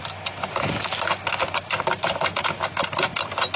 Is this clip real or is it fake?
real